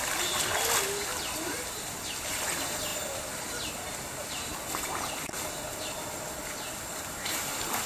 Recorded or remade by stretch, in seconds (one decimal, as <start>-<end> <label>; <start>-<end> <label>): 0.0-7.9 recorded